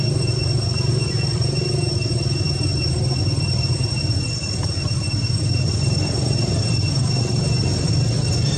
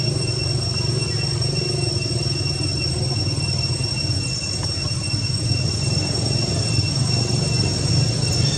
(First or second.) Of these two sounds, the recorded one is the second